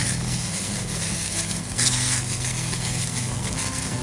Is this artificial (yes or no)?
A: yes